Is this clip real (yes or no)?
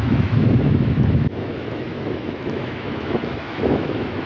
no